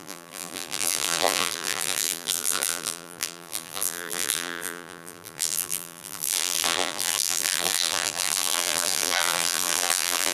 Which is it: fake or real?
fake